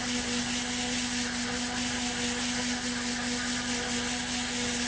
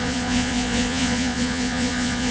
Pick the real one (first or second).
first